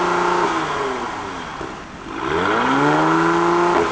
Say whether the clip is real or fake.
real